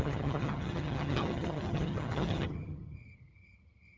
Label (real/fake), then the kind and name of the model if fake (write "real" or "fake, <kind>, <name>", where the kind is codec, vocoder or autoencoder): fake, vocoder, HiFi-GAN